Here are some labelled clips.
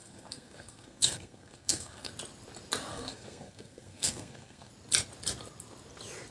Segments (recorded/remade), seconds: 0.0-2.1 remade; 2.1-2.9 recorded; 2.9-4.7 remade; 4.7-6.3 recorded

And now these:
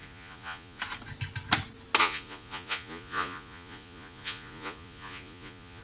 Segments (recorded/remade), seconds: 0.0-0.8 remade; 0.8-2.0 recorded; 2.0-5.8 remade

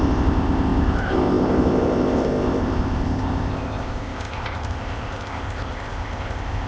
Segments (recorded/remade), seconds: 0.0-6.7 remade

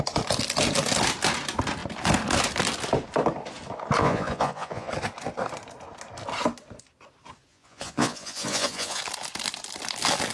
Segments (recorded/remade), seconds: 0.0-4.0 recorded; 4.0-4.9 remade; 4.9-7.5 recorded; 7.5-9.0 remade; 9.0-10.3 recorded

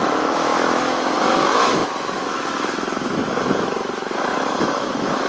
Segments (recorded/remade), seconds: 0.0-5.3 remade

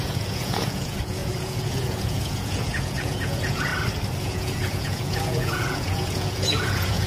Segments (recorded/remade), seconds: 0.0-3.7 remade; 3.7-4.2 recorded; 4.2-7.1 remade